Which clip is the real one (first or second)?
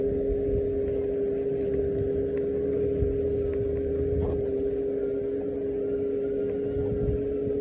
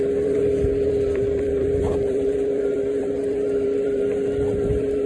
first